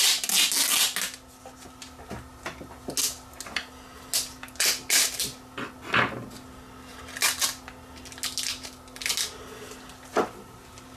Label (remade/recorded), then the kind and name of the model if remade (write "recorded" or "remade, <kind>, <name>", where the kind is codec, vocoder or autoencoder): recorded